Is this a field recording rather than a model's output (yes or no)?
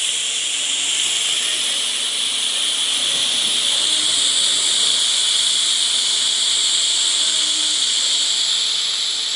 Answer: yes